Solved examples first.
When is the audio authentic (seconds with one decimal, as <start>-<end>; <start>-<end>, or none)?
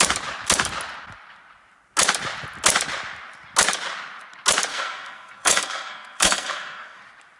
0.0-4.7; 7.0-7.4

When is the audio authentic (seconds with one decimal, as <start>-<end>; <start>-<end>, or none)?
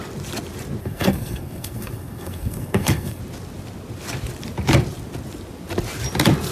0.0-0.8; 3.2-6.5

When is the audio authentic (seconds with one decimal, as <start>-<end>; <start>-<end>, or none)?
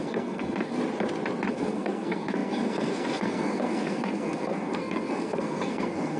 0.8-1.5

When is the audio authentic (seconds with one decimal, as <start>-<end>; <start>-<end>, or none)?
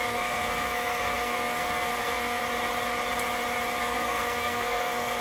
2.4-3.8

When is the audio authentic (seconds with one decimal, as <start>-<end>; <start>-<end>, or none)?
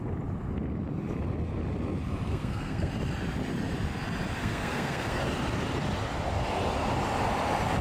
0.0-2.3; 2.9-4.4; 5.2-7.8